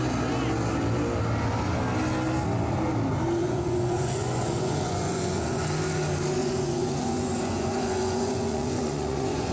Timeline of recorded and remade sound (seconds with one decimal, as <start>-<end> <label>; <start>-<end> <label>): 0.0-3.4 recorded; 3.4-5.6 remade; 5.6-6.4 recorded; 6.4-9.5 remade